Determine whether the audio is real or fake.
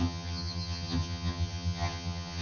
fake